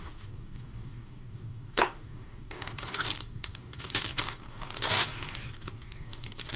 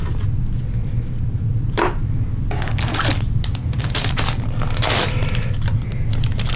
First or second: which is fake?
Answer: first